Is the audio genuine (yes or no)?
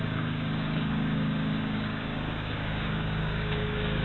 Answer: no